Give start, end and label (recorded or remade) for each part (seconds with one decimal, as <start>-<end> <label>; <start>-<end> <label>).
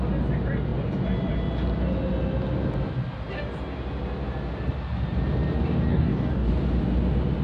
0.0-5.9 recorded; 5.9-6.5 remade; 6.5-7.4 recorded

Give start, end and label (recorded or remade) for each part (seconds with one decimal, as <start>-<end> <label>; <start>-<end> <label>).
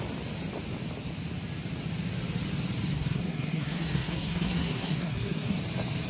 0.0-2.9 recorded; 2.9-5.6 remade; 5.6-6.1 recorded